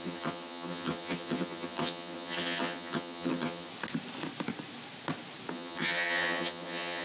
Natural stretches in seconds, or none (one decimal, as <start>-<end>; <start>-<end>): 3.7-5.5